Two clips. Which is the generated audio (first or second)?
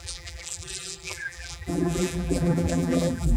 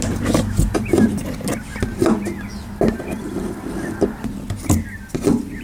first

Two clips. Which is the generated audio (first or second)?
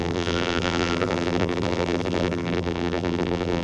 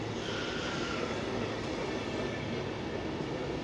first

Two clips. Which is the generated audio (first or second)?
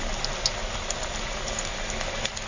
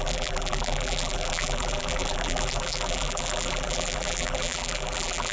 second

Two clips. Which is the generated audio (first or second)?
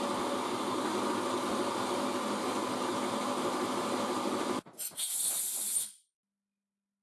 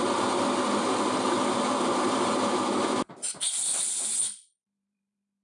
second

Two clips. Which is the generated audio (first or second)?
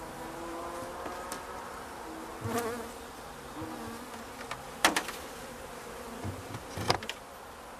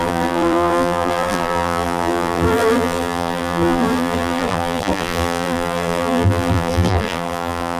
second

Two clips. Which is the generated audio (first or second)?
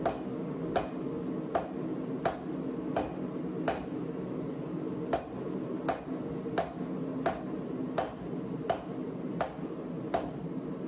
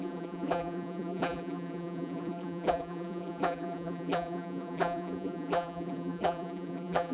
second